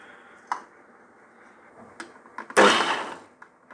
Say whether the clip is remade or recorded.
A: recorded